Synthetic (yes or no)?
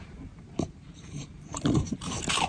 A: yes